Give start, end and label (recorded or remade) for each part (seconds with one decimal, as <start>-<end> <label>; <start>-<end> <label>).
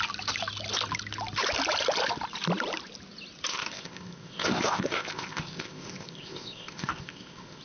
0.0-3.5 recorded; 3.5-7.6 remade